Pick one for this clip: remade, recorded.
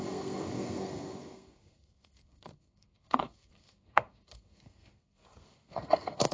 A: remade